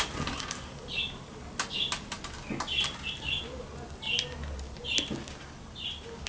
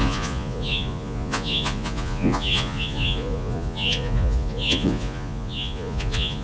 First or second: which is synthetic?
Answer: second